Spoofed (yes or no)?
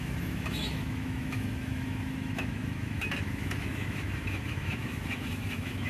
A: yes